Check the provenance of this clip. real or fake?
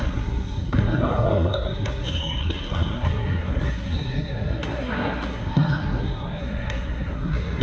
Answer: fake